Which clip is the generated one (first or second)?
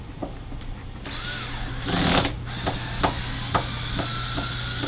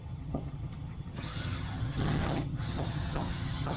second